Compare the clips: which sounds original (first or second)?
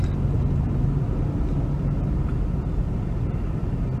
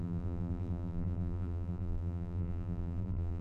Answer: first